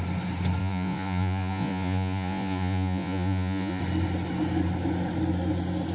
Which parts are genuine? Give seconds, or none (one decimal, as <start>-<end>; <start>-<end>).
0.0-0.6; 3.8-5.9